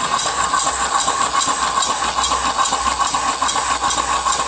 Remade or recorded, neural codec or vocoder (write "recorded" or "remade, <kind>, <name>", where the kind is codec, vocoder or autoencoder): recorded